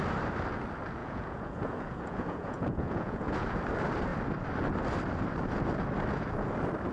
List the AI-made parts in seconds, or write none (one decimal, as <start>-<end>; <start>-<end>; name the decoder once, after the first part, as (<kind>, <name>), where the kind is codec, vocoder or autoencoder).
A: 1.0-3.6 (vocoder, Vocos)